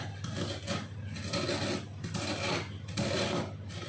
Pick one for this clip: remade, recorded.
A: recorded